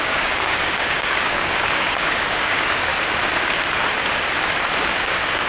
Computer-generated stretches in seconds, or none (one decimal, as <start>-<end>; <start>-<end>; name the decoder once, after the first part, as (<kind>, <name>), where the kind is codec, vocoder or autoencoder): 0.0-2.9 (codec, DAC); 4.8-5.5